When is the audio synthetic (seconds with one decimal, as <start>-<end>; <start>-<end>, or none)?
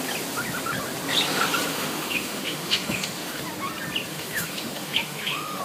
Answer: 1.7-3.4; 4.1-5.6